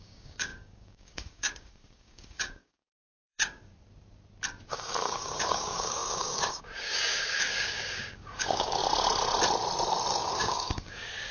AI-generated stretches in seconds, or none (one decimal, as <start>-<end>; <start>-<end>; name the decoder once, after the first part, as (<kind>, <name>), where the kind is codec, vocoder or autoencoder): 0.0-3.7 (codec, DAC); 4.7-8.8; 10.1-11.3